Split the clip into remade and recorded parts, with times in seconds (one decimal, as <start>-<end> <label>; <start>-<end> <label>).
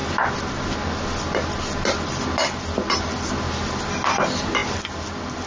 0.0-5.5 recorded